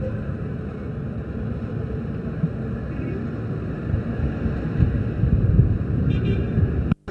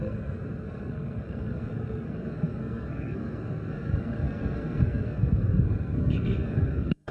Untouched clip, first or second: first